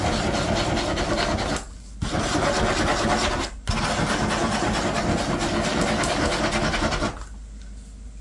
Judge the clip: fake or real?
real